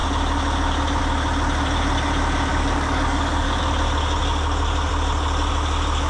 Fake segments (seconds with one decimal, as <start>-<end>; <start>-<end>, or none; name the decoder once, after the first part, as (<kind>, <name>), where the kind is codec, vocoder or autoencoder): 2.5-3.6 (codec, DAC)